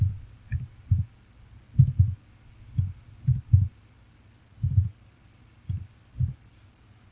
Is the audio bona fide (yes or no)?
yes